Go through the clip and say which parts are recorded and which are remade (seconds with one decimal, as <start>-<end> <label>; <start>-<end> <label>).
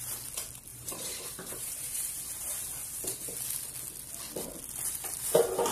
0.0-0.7 recorded; 0.7-2.2 remade; 2.2-5.7 recorded